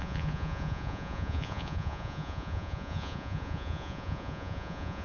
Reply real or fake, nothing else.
fake